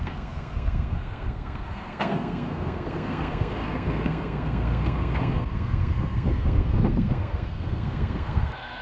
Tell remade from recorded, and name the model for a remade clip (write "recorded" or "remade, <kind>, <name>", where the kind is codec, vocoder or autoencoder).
remade, codec, SNAC